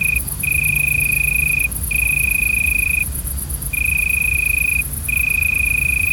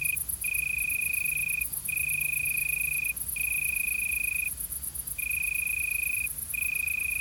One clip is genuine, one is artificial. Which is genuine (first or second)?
second